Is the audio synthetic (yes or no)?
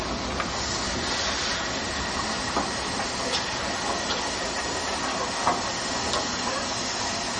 no